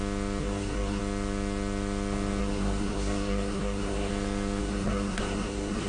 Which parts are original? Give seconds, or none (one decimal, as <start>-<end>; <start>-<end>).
0.0-0.4; 1.0-2.4; 4.1-4.6